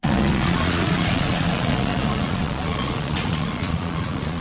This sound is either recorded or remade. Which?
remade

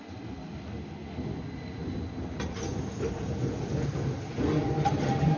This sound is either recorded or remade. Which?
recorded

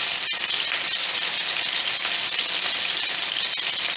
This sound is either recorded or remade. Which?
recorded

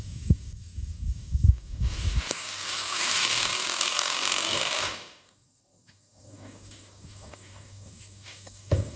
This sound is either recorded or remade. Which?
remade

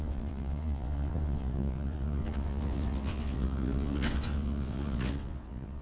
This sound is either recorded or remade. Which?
remade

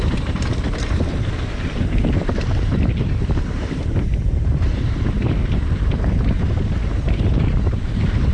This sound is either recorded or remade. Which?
remade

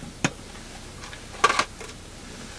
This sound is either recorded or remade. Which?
recorded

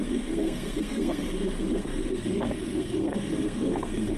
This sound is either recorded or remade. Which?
remade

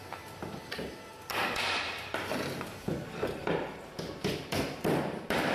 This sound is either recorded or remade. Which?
remade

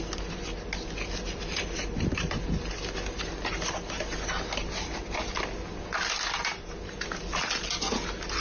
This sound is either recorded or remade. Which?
recorded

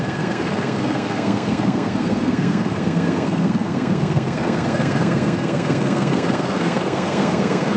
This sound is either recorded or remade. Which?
remade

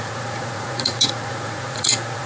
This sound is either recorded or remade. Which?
remade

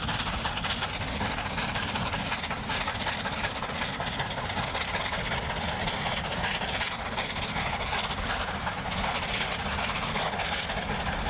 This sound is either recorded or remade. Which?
recorded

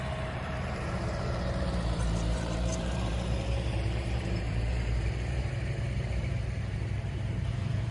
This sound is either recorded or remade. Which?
remade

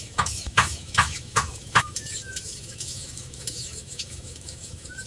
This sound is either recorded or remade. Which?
remade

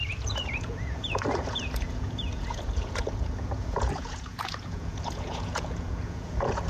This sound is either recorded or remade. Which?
remade